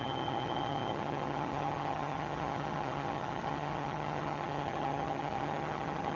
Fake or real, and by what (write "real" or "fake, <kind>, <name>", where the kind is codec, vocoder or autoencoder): fake, vocoder, HiFi-GAN